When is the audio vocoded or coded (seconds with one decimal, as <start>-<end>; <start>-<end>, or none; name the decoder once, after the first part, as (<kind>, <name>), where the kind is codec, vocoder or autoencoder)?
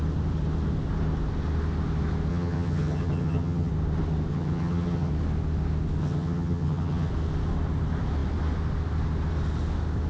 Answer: 2.3-3.7 (vocoder, HiFi-GAN); 4.3-5.1; 6.0-7.1